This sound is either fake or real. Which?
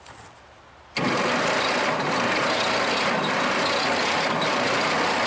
real